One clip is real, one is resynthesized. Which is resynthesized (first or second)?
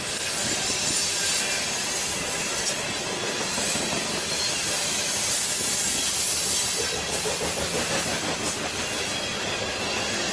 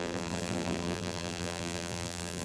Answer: second